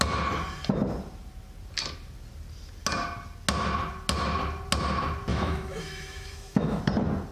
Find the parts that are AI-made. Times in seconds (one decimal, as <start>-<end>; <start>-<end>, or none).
5.3-6.8